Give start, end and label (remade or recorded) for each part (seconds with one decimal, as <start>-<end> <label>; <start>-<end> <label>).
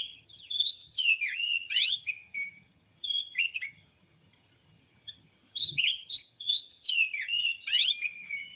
0.0-8.6 remade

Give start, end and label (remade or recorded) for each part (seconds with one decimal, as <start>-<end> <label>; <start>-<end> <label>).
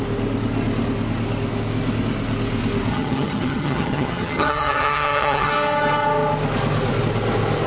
0.0-2.9 recorded; 2.9-5.5 remade; 5.5-7.7 recorded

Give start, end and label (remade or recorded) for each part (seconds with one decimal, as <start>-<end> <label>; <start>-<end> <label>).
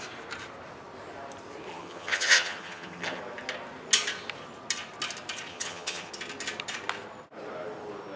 0.0-1.7 recorded; 1.7-3.2 remade; 3.2-5.5 recorded; 5.5-6.1 remade; 6.1-8.2 recorded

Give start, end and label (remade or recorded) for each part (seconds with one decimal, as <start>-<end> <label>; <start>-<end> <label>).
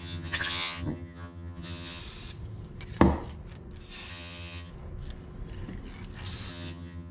0.0-2.0 remade; 2.0-4.1 recorded; 4.1-4.7 remade; 4.7-6.5 recorded; 6.5-7.1 remade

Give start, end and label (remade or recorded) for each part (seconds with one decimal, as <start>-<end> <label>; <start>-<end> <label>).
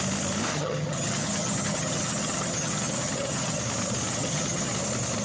0.0-0.5 recorded; 0.5-3.6 remade; 3.6-4.1 recorded; 4.1-4.7 remade; 4.7-5.2 recorded